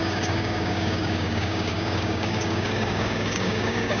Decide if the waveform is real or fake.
fake